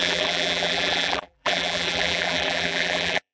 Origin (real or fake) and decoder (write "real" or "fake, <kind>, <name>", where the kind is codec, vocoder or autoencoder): fake, vocoder, BigVGAN v2